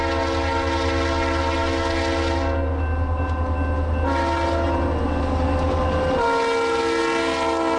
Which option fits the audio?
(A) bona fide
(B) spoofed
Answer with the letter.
A